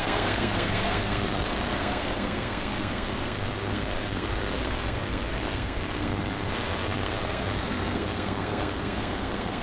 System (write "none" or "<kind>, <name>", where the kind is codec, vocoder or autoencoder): codec, SNAC